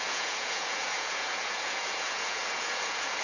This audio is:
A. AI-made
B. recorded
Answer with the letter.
A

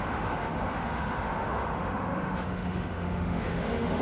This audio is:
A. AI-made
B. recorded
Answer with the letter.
A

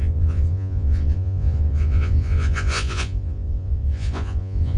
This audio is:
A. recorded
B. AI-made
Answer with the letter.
B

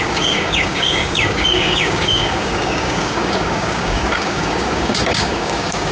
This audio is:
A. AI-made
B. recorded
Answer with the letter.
A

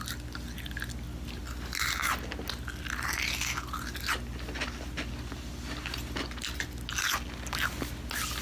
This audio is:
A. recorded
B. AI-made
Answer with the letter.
A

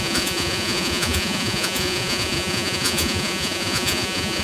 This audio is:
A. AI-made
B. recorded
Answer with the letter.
A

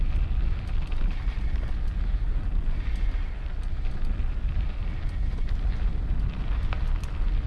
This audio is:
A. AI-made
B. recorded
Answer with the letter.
B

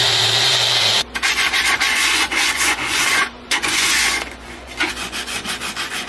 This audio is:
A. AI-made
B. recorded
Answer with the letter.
A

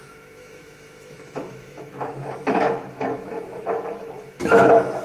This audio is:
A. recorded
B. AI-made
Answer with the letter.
B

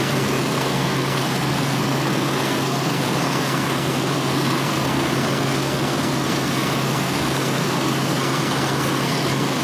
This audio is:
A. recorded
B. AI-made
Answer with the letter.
B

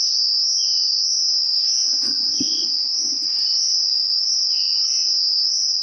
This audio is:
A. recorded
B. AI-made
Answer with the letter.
A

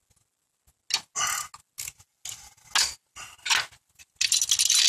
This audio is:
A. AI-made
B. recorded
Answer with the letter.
B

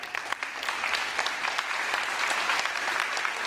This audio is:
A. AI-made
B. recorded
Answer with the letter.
B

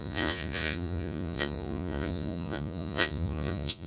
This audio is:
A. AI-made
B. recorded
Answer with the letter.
A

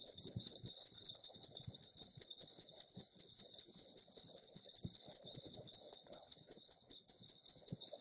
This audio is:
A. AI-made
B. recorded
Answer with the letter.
A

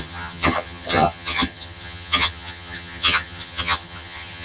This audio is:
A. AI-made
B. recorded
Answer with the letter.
A